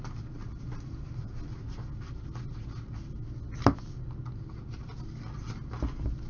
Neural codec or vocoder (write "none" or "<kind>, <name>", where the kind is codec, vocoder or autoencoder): none